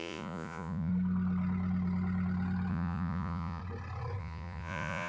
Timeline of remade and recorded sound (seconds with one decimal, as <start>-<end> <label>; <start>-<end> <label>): 0.0-0.9 remade; 0.9-2.7 recorded; 2.7-3.6 remade; 3.6-4.2 recorded; 4.2-5.1 remade